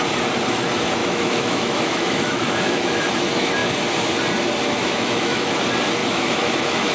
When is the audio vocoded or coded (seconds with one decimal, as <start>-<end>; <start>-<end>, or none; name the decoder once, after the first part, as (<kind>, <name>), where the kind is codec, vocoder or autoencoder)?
1.0-3.1 (autoencoder, DAC-VAE); 4.8-5.6; 6.0-6.9

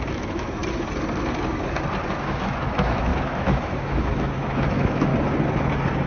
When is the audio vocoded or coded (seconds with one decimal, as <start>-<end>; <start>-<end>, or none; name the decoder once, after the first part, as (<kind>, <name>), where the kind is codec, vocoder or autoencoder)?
0.0-0.6 (autoencoder, DAC-VAE); 2.1-5.1

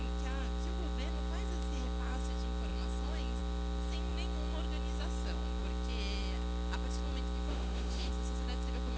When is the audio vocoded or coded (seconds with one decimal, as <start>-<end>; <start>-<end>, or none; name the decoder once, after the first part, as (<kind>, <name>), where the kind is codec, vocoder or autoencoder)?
7.5-8.1 (autoencoder, DAC-VAE)

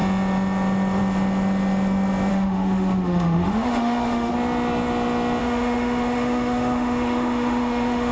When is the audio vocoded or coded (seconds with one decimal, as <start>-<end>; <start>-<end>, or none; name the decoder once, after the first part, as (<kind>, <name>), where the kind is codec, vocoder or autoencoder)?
2.3-4.3 (autoencoder, DAC-VAE); 5.4-8.1

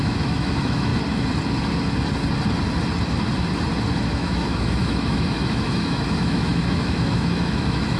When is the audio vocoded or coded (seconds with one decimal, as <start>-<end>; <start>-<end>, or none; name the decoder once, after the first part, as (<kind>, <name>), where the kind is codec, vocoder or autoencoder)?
0.0-0.9 (autoencoder, DAC-VAE); 4.1-8.0